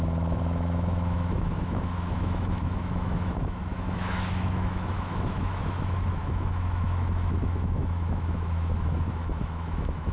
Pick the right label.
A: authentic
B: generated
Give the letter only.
B